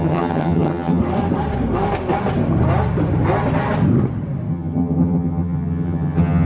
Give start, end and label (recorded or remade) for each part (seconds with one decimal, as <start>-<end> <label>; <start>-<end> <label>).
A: 0.0-1.0 remade; 1.0-4.5 recorded; 4.5-6.4 remade